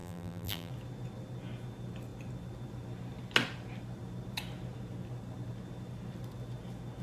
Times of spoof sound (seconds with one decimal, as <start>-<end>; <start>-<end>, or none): 0.0-0.7